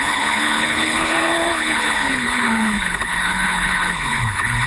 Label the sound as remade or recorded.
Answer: remade